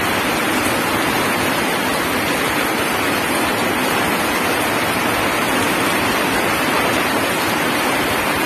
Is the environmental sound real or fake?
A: real